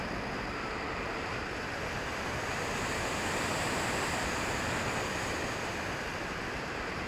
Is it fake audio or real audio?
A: real